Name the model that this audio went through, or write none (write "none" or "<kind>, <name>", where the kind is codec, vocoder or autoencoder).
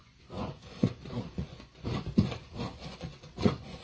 vocoder, Vocos